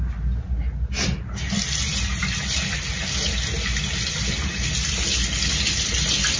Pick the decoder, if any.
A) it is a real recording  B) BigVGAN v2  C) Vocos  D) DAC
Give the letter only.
A